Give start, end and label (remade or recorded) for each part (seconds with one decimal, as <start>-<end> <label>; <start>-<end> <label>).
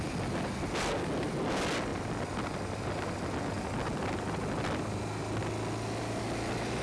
0.0-6.8 recorded